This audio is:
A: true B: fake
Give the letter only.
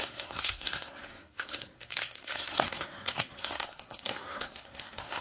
B